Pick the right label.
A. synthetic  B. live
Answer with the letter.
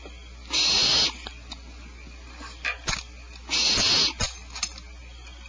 B